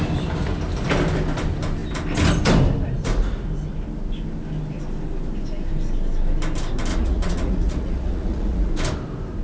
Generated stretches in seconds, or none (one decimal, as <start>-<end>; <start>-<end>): 6.9-8.7